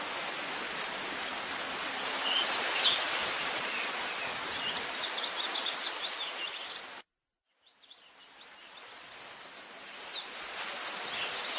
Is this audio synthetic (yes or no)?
no